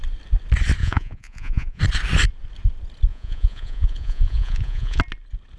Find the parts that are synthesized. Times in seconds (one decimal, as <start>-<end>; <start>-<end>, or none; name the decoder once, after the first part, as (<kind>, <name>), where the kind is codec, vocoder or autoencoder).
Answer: 0.8-1.8 (vocoder, Vocos); 3.1-5.0